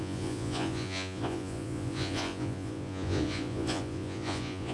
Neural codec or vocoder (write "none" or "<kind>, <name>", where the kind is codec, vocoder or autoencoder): vocoder, Vocos